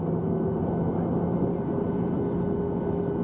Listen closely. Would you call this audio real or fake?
real